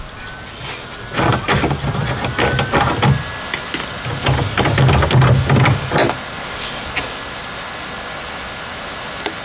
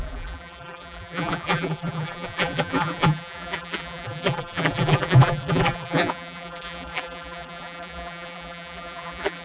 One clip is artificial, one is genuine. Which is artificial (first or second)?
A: second